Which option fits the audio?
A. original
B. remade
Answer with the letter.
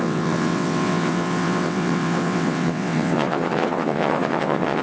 B